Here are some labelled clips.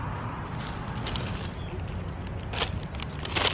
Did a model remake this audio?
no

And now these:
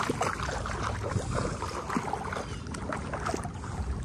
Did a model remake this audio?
no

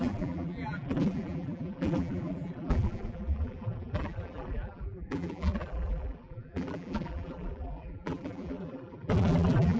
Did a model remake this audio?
yes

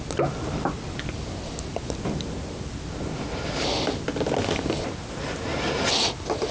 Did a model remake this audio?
no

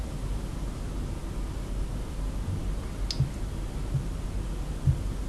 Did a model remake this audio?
no